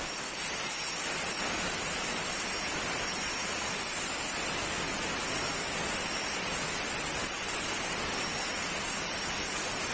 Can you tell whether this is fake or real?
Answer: real